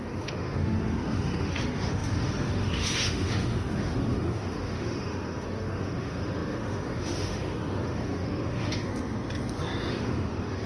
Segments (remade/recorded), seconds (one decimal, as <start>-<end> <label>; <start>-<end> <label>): 0.0-8.9 remade; 8.9-9.9 recorded; 9.9-10.7 remade